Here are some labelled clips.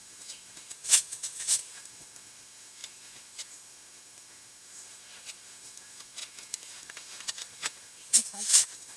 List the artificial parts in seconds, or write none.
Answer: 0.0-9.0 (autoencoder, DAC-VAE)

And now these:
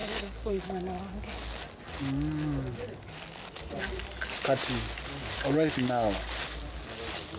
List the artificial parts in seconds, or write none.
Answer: 0.0-0.6 (codec, SNAC)